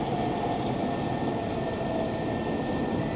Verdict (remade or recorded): recorded